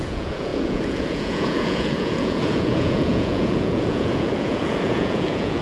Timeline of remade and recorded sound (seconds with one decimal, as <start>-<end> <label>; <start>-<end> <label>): 0.0-5.6 remade